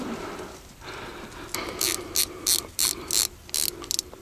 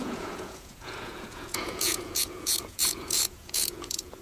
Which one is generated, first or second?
second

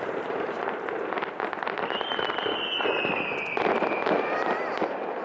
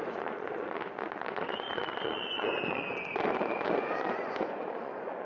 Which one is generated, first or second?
second